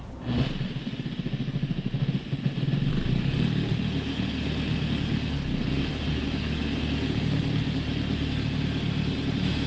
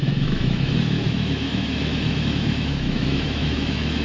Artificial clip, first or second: second